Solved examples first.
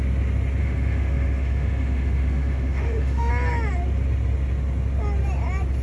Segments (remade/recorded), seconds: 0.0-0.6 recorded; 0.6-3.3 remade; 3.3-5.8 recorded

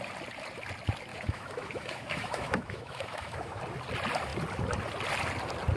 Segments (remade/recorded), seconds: 0.0-1.1 recorded; 1.1-3.6 remade; 3.6-5.8 recorded

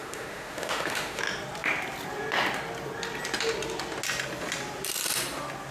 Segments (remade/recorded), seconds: 0.0-1.2 remade; 1.2-5.7 recorded

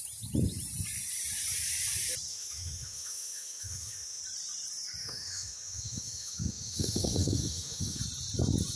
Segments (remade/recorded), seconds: 0.0-2.3 recorded; 2.3-4.2 remade; 4.2-5.0 recorded; 5.0-8.0 remade; 8.0-8.8 recorded

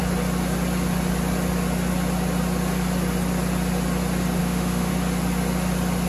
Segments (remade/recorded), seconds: 0.0-4.4 recorded; 4.4-4.9 remade; 4.9-6.1 recorded